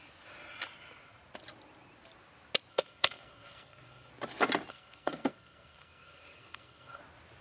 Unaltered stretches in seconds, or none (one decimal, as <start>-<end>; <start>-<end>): 0.0-2.7; 4.1-4.7; 7.0-7.4

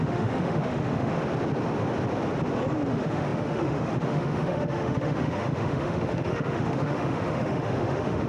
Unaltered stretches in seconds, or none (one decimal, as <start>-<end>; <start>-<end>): 1.2-2.9

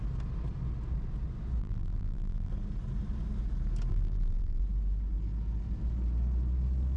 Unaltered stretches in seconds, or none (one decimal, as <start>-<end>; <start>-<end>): 0.0-1.6; 2.5-3.9; 4.6-7.0

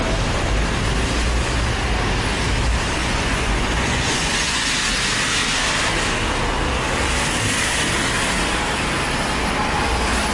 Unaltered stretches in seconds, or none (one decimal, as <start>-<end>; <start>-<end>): 0.0-3.0; 4.7-10.3

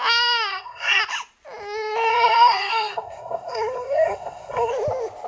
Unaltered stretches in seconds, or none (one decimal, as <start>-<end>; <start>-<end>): 0.0-0.5; 1.0-2.1; 4.7-5.3

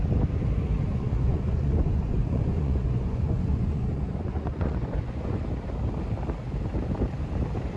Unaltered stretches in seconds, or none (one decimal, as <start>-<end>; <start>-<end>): 0.0-0.9; 5.4-7.8

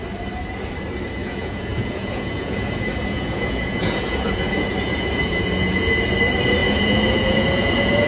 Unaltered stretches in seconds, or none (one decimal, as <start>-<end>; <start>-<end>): 0.0-1.2; 6.1-6.6

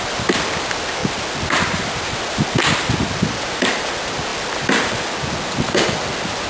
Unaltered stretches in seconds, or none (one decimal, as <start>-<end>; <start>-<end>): 0.0-4.3; 5.2-6.5